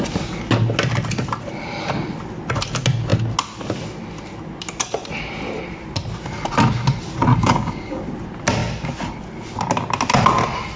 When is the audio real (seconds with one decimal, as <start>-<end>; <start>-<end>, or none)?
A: 0.0-7.3; 8.0-10.8